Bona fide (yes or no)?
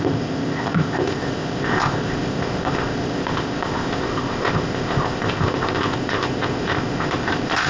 no